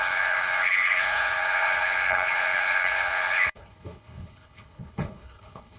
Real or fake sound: fake